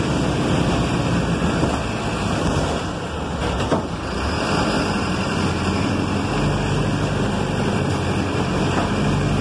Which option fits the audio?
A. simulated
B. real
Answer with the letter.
B